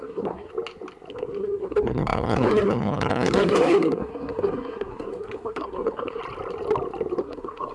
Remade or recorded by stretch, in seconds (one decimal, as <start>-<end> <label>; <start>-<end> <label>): 0.0-0.5 remade; 0.5-1.1 recorded; 1.1-6.2 remade; 6.2-7.2 recorded; 7.2-7.7 remade